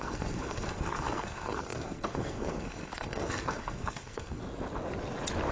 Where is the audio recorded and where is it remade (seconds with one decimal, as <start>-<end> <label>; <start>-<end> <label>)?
0.0-4.4 remade; 4.4-5.5 recorded